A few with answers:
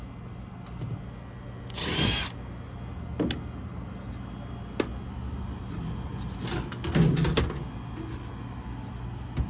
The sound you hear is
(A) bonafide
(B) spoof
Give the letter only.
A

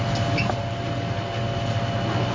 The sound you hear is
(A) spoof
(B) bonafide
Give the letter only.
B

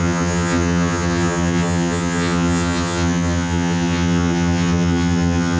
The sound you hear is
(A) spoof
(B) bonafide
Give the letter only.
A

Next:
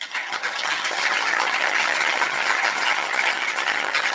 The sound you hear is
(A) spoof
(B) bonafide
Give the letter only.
A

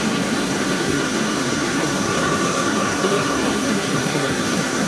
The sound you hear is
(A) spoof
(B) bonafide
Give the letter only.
A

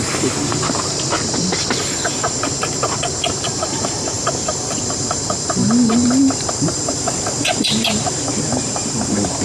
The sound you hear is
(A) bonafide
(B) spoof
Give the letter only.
B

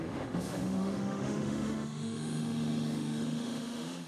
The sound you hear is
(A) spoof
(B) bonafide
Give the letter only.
A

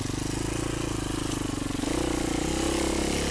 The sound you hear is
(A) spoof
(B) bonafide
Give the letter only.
B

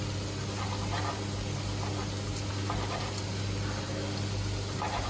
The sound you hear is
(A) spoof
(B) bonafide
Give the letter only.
B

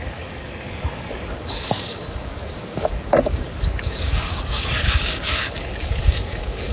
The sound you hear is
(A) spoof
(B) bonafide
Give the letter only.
A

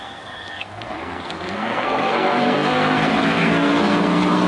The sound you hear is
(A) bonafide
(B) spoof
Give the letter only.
B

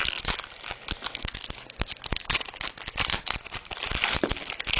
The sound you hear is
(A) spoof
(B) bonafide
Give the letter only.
B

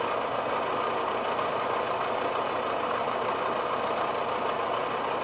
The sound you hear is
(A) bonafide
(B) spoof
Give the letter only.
A